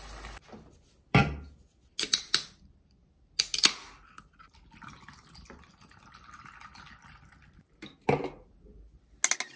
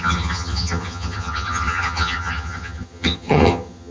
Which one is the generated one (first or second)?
second